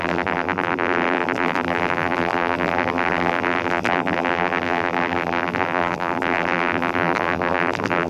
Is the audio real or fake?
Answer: fake